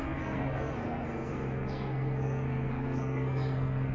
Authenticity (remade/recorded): remade